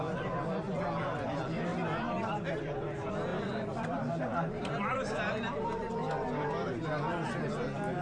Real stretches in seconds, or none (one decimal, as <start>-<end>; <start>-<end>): 0.0-3.3; 4.7-8.0